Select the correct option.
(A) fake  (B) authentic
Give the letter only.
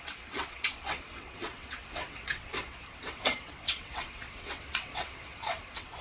A